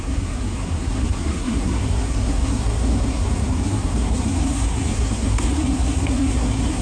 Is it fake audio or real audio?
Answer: fake